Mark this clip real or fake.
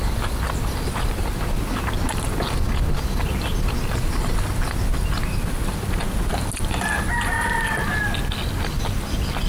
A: real